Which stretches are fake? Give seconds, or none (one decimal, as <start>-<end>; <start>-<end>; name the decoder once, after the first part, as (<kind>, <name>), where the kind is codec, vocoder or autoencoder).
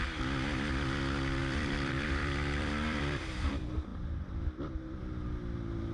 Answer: 1.4-3.5 (vocoder, BigVGAN v2)